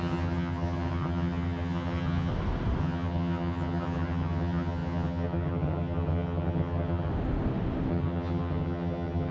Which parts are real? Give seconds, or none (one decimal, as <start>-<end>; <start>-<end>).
2.3-2.8; 7.1-7.9